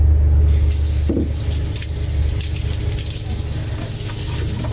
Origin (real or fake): real